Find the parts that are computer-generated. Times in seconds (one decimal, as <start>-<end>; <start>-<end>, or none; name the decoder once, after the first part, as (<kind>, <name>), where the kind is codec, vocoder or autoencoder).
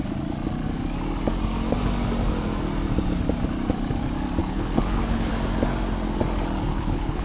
4.4-5.3 (codec, HILCodec); 6.7-7.2